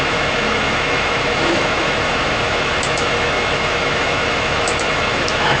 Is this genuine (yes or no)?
no